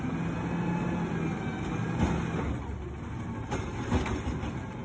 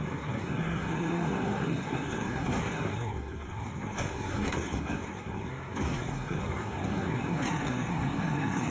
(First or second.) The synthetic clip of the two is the second